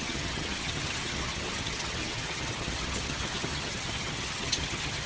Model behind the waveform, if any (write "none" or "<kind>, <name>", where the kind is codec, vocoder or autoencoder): vocoder, HiFi-GAN